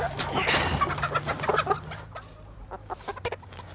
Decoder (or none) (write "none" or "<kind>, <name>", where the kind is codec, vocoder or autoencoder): none